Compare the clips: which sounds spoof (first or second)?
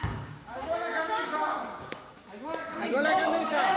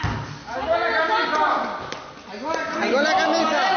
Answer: first